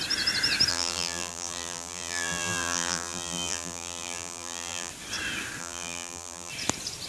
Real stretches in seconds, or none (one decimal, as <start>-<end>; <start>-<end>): 0.0-0.7; 4.9-5.6; 6.5-7.1